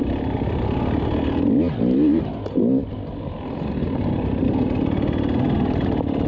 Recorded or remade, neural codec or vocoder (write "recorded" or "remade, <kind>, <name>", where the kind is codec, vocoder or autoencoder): recorded